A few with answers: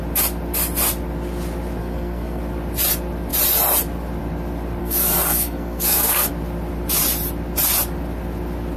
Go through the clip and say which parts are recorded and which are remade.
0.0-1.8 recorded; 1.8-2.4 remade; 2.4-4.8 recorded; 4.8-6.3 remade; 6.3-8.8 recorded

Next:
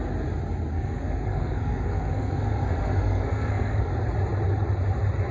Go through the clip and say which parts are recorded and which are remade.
0.0-0.7 recorded; 0.7-3.9 remade; 3.9-5.3 recorded